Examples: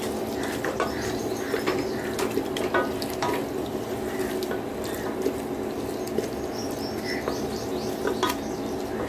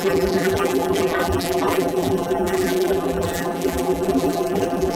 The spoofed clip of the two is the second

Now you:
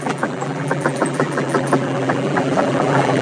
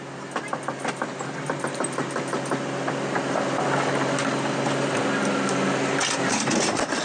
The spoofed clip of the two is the first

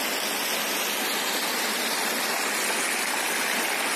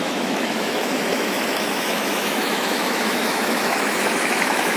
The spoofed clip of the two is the second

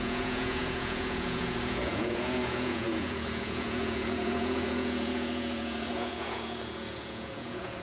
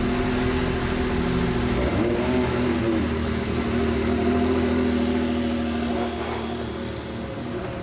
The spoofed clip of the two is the first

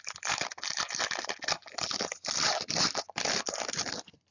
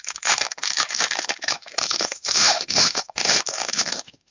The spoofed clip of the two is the second